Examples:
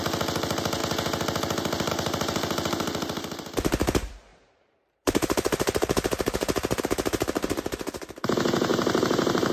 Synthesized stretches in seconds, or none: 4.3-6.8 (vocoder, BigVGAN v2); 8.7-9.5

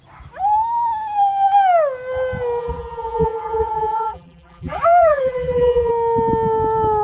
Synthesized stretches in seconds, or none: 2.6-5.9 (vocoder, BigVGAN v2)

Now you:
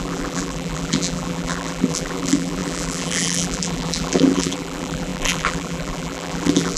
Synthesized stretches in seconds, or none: 0.0-6.8 (vocoder, BigVGAN v2)

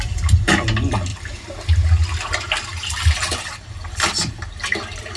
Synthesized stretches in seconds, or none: 1.1-1.6 (vocoder, BigVGAN v2); 2.7-3.6

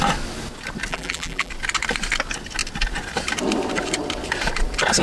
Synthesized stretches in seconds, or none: 0.9-1.5 (vocoder, BigVGAN v2)

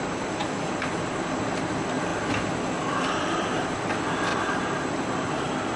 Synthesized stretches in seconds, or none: 2.1-3.9 (vocoder, BigVGAN v2); 4.3-4.8

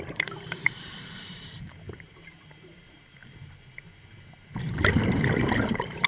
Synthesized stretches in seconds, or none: 0.0-3.2 (vocoder, BigVGAN v2); 5.6-6.1

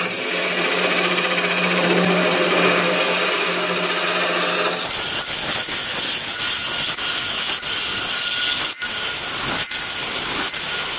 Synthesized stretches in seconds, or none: none